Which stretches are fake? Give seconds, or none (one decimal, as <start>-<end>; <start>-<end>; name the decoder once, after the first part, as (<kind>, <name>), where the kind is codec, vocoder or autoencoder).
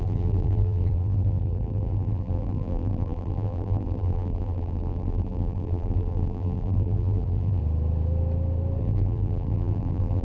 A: 0.0-7.6 (vocoder, BigVGAN v2); 8.8-10.2